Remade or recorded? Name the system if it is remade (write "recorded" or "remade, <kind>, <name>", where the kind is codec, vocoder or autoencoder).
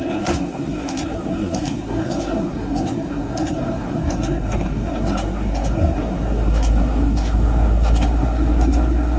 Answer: remade, codec, SNAC